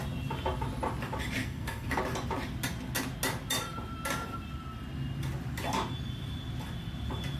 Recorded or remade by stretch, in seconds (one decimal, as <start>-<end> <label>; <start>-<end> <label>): 0.0-1.4 recorded; 1.4-2.0 remade; 2.0-7.4 recorded